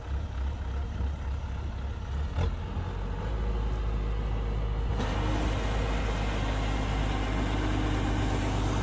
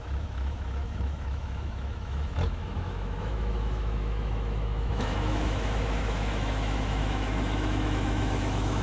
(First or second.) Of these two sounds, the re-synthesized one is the second